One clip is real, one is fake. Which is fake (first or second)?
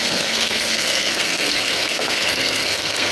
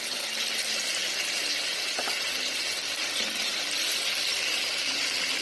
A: first